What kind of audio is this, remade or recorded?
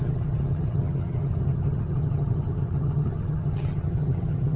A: remade